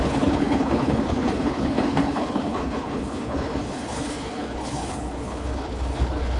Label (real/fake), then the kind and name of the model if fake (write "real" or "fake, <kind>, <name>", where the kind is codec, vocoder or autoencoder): fake, codec, HILCodec